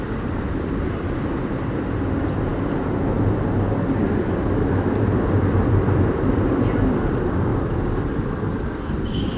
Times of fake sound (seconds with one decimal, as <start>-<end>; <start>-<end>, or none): 0.0-2.5; 4.2-7.5; 8.1-9.4